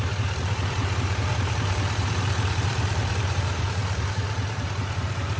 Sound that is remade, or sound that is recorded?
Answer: remade